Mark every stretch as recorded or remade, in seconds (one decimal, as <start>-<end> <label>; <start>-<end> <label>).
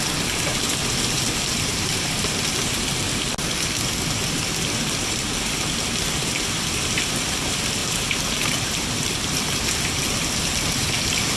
0.0-11.4 recorded